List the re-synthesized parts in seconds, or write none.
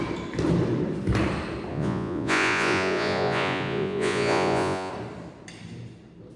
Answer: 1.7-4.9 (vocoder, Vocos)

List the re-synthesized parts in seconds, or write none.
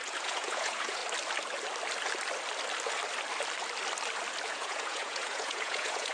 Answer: 0.0-1.0 (vocoder, Vocos); 4.5-6.1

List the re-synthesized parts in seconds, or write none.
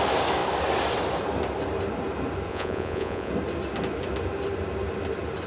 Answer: 2.5-3.3 (vocoder, Vocos)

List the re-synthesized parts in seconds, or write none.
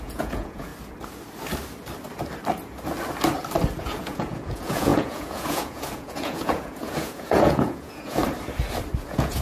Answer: 0.0-0.7 (vocoder, Vocos); 3.8-8.2; 9.0-9.4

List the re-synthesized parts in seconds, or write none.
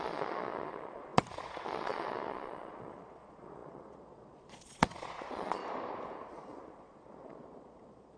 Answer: 0.0-5.6 (vocoder, Vocos); 6.3-8.2